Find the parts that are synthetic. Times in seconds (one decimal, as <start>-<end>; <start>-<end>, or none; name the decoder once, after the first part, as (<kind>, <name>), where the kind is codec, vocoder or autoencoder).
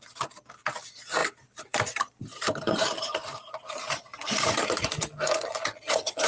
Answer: 1.2-5.0 (vocoder, BigVGAN v2)